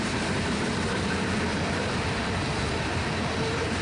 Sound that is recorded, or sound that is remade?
remade